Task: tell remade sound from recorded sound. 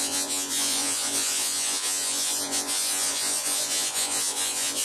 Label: remade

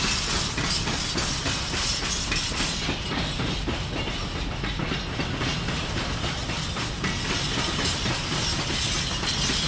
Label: recorded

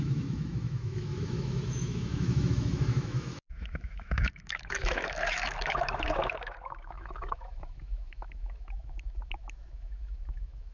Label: remade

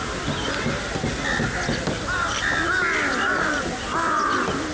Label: recorded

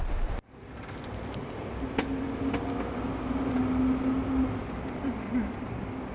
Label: recorded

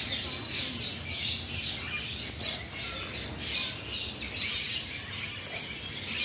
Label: recorded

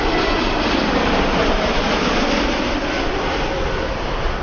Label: remade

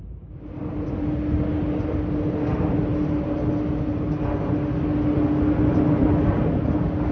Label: recorded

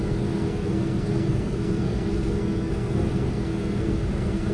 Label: remade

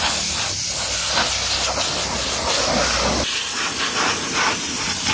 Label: recorded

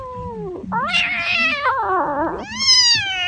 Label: recorded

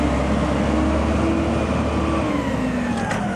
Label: recorded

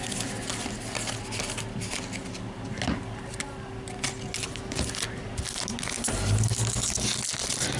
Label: recorded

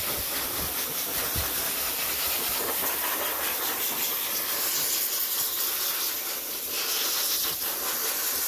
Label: recorded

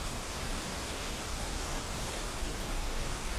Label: remade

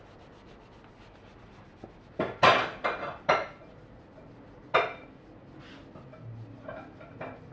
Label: recorded